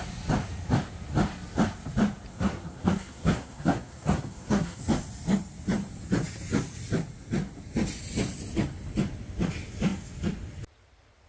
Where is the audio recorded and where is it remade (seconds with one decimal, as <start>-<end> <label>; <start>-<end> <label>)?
0.0-2.3 recorded; 2.3-4.8 remade; 4.8-11.3 recorded